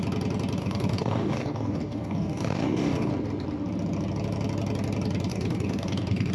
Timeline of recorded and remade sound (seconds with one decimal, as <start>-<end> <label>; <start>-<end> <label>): 0.0-0.6 recorded; 0.6-3.1 remade; 3.1-5.3 recorded; 5.3-6.3 remade